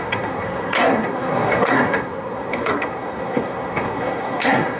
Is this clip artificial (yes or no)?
yes